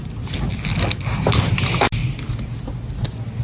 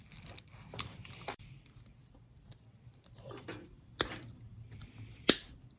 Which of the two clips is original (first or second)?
first